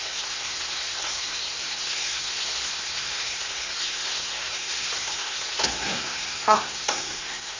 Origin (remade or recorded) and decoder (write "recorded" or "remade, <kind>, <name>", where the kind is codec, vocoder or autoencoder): remade, codec, SNAC